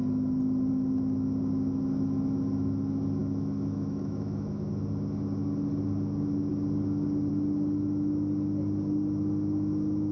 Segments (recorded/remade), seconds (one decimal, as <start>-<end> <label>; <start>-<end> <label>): 0.0-3.2 recorded; 3.2-4.7 remade; 4.7-10.1 recorded